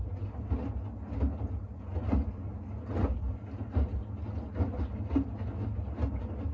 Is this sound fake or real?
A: real